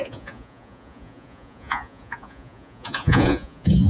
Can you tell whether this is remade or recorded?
remade